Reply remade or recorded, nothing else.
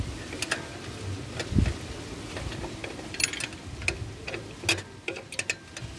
recorded